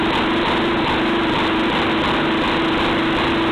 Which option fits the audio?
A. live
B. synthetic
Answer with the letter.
A